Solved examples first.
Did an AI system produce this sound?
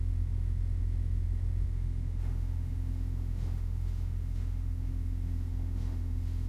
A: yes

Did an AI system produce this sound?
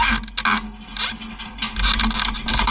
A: no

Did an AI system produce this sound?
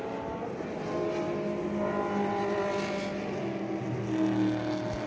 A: no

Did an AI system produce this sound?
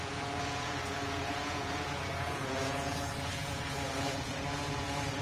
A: yes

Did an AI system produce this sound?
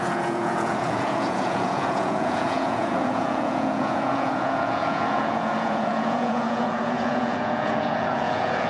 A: yes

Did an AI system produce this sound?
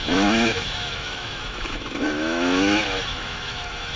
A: yes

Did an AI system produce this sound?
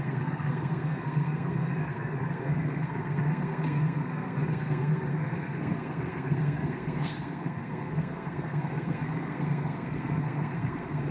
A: yes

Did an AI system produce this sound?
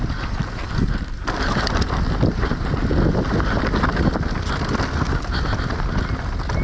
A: no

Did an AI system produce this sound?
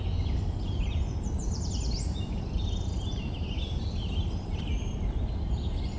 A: no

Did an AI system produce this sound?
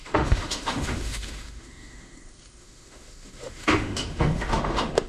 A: yes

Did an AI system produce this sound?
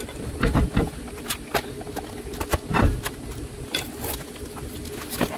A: no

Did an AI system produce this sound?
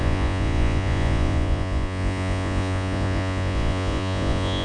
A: yes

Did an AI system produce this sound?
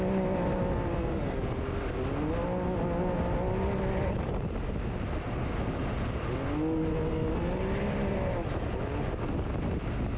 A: no